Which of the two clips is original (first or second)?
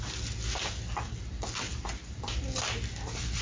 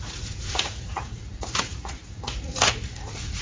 first